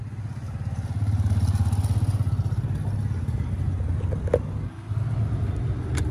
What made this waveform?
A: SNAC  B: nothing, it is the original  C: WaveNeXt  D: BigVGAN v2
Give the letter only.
B